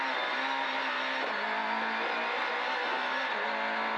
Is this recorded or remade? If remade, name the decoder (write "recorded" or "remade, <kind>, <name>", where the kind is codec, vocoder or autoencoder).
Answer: recorded